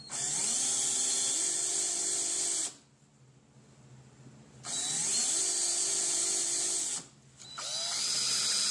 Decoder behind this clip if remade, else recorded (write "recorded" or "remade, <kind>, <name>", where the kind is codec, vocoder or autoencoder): recorded